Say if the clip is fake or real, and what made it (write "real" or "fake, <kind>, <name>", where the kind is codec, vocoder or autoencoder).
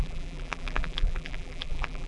fake, vocoder, BigVGAN v2